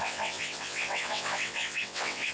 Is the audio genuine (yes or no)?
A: no